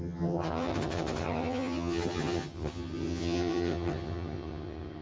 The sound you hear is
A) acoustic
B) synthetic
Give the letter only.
B